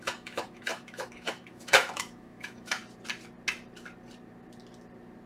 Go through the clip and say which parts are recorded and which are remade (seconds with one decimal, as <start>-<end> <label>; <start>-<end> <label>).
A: 0.0-2.8 remade; 2.8-5.3 recorded